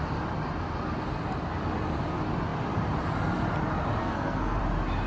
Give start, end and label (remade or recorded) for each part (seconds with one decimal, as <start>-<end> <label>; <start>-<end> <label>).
0.0-4.0 recorded; 4.0-4.6 remade; 4.6-5.1 recorded